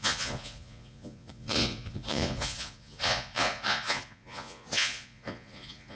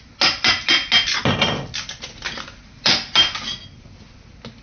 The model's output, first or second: first